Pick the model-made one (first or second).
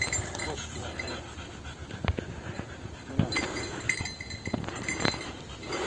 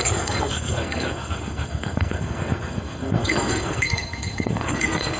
second